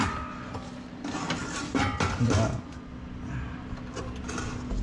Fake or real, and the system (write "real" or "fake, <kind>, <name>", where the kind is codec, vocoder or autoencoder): real